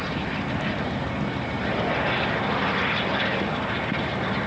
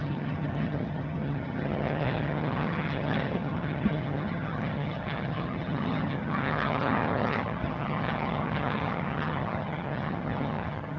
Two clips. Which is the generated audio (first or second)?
second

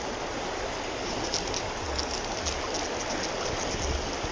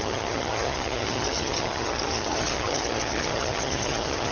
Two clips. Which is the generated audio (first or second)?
second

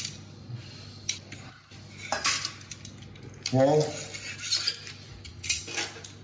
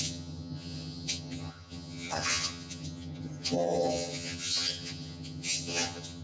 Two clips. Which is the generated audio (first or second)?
second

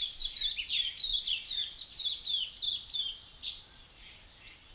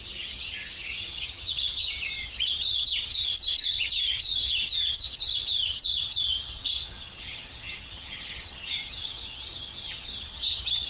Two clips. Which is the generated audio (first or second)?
second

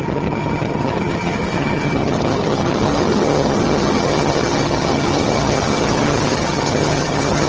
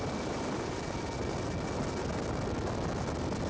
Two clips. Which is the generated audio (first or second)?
first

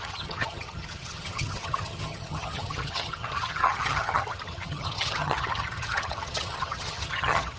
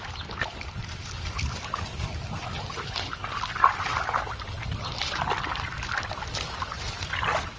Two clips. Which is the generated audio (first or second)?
first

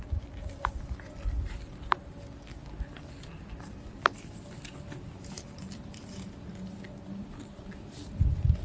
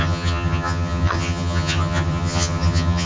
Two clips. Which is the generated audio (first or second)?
second